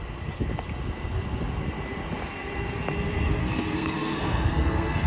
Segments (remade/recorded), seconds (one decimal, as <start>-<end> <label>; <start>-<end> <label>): 0.0-3.4 recorded; 3.4-5.1 remade